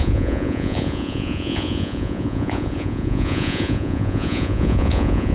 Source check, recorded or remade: remade